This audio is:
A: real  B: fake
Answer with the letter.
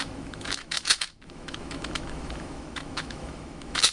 B